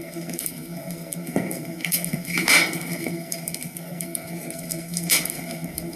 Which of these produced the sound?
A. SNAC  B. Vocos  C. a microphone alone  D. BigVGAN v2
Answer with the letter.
A